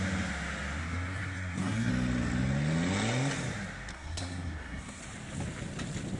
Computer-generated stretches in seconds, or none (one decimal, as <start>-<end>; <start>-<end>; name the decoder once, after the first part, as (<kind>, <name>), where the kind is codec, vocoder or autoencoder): 0.8-1.9 (codec, SNAC); 3.9-5.0